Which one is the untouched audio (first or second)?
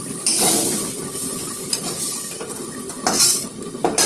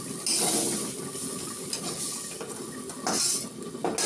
second